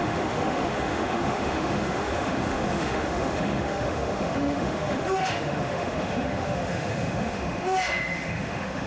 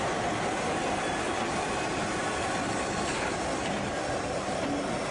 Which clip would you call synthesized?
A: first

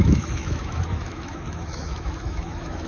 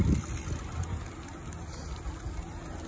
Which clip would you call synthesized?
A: first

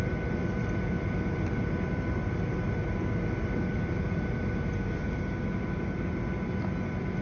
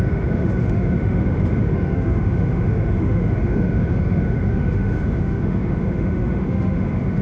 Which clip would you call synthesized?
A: second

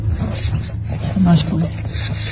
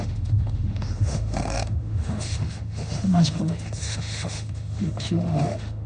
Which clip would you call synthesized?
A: second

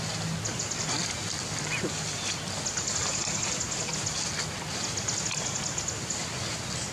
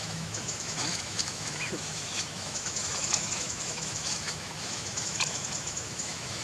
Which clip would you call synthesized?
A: second